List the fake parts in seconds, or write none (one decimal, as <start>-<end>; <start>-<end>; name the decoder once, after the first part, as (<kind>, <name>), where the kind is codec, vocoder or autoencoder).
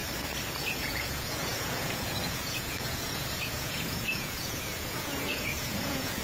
0.6-6.2 (vocoder, Vocos)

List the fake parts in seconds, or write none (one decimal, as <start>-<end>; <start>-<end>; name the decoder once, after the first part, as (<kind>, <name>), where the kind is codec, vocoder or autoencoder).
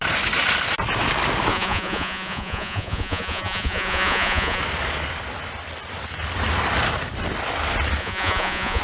1.5-4.6 (vocoder, Vocos); 8.0-8.8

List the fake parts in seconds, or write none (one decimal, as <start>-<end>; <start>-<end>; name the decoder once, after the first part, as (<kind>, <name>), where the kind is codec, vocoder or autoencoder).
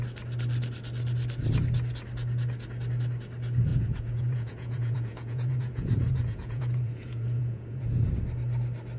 3.7-8.1 (vocoder, Vocos)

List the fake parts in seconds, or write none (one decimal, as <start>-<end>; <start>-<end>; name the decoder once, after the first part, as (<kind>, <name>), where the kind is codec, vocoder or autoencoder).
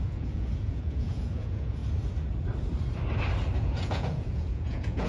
0.0-1.8 (vocoder, Vocos); 3.6-5.1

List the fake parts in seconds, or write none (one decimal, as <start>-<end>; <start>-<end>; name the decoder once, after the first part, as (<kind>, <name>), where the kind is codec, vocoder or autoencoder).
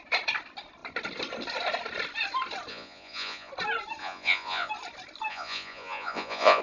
2.7-3.5 (vocoder, Vocos); 4.0-4.7; 5.3-6.6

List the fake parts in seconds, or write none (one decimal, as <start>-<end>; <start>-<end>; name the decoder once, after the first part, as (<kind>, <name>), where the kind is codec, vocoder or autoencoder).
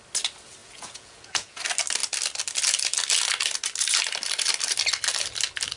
0.6-1.6 (vocoder, Vocos)